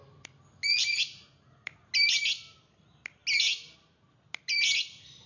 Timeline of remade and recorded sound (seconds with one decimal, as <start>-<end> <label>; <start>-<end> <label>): 0.0-5.3 recorded